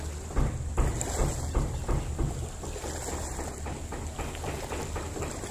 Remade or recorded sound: recorded